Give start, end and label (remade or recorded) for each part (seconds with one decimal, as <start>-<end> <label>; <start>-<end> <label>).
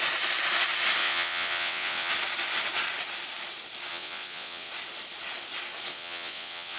0.0-1.0 recorded; 1.0-2.1 remade; 2.1-3.9 recorded; 3.9-4.7 remade; 4.7-5.9 recorded; 5.9-6.8 remade